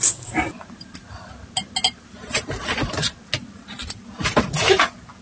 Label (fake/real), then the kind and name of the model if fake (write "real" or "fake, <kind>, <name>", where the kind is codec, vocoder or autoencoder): real